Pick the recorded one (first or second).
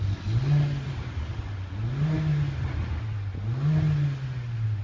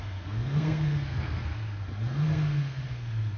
first